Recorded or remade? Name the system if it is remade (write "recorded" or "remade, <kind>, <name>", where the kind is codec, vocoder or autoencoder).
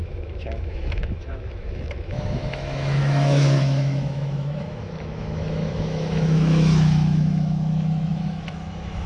remade, autoencoder, DAC-VAE